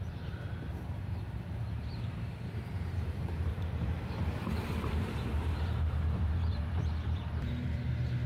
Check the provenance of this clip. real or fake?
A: fake